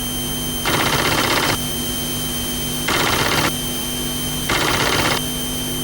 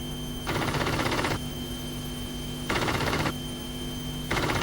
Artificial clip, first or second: second